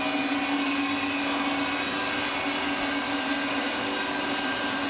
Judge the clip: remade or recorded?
recorded